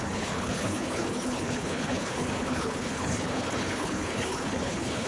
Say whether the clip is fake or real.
fake